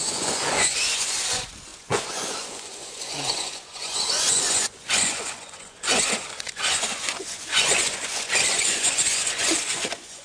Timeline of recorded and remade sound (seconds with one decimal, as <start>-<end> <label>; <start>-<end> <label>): 0.0-10.2 remade

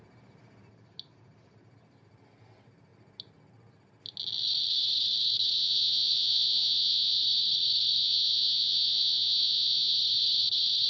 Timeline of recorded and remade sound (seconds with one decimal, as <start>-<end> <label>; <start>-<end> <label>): 0.0-5.6 recorded; 5.6-7.2 remade; 7.2-8.0 recorded; 8.0-10.0 remade; 10.0-10.9 recorded

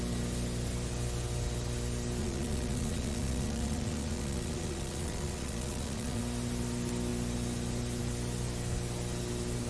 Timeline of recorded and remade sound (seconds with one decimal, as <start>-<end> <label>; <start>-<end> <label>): 0.0-2.2 recorded; 2.2-6.2 remade; 6.2-9.7 recorded

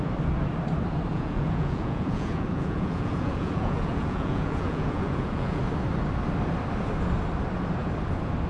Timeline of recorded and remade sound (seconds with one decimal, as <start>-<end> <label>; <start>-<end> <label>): 0.0-1.1 recorded; 1.1-5.6 remade; 5.6-8.5 recorded

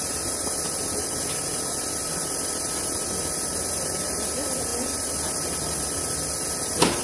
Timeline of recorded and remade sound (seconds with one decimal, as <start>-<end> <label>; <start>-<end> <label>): 0.0-7.0 recorded

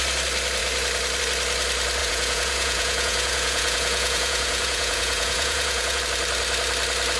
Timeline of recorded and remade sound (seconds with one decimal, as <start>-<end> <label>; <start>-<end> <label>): 0.0-2.0 recorded; 2.0-6.0 remade; 6.0-7.2 recorded

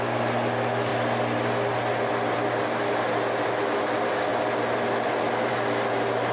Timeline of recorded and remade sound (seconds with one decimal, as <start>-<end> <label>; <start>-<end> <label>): 0.0-6.3 recorded